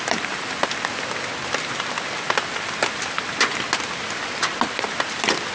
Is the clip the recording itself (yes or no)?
yes